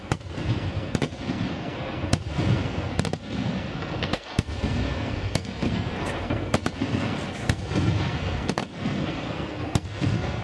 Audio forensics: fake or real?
fake